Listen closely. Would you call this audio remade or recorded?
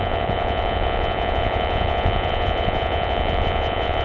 remade